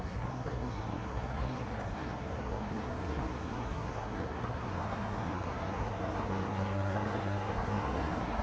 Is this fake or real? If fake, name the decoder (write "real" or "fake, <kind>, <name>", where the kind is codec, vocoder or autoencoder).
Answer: fake, codec, SNAC